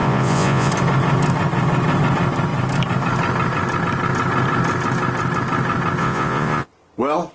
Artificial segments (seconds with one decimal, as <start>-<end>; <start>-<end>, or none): 0.0-0.7; 6.0-6.7